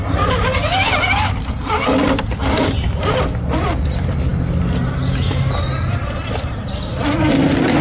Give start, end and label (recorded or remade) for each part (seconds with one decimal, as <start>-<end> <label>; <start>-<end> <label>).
0.0-7.8 recorded